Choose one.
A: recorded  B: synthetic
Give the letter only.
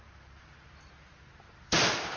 A